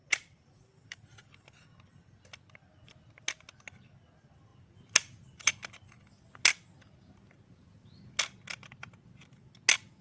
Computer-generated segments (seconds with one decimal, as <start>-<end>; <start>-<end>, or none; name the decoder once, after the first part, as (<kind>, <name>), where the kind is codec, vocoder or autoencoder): none